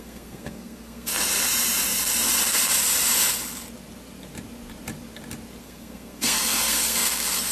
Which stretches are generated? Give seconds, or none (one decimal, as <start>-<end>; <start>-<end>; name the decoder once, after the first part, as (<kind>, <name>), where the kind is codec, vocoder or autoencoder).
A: 0.0-1.1 (codec, SNAC); 5.6-7.5